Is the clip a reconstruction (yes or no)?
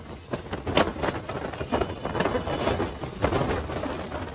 no